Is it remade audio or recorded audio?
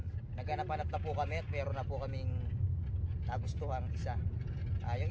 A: recorded